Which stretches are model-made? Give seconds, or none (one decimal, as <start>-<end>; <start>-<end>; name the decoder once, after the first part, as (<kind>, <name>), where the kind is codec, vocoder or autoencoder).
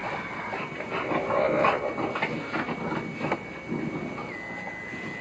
none